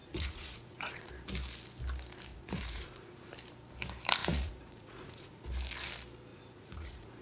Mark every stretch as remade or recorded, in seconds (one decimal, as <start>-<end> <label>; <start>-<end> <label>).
0.0-1.1 remade; 1.1-2.3 recorded; 2.3-3.3 remade; 3.3-4.2 recorded; 4.2-5.4 remade; 5.4-6.3 recorded; 6.3-7.2 remade